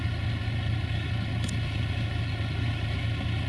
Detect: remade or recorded recorded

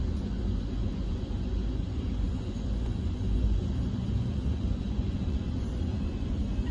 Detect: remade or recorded remade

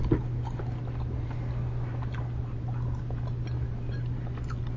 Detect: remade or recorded recorded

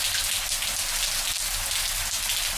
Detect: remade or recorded recorded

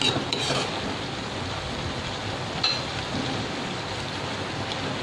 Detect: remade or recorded recorded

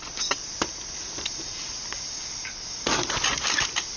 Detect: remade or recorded recorded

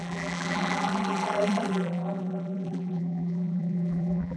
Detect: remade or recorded remade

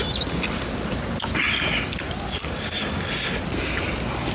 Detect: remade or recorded recorded